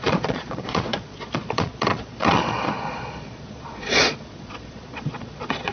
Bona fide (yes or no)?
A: no